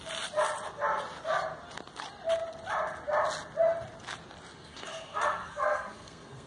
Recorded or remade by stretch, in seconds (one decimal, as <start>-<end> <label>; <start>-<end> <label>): 0.0-4.5 recorded; 4.5-6.5 remade